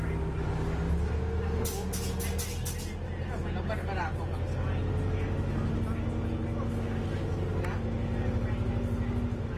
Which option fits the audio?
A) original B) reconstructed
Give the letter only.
A